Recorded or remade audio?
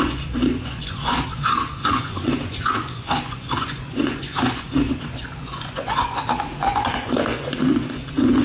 remade